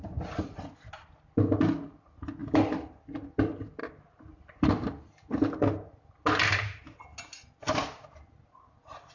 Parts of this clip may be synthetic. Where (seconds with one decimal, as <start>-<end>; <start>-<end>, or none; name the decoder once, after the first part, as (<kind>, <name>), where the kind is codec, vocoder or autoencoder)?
none